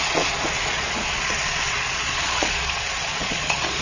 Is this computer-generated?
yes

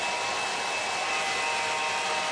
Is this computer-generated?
no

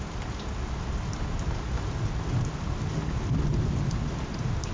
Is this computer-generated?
no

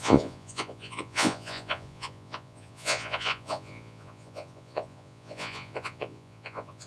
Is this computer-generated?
yes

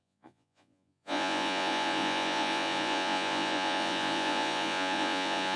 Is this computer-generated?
yes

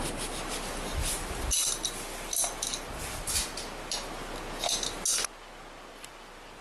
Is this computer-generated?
no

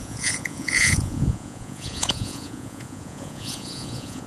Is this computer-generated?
yes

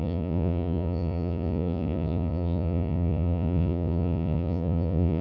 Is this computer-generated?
yes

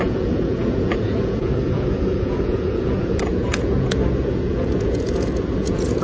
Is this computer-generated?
yes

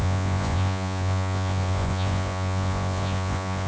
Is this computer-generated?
yes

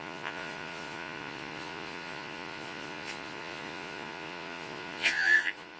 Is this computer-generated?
yes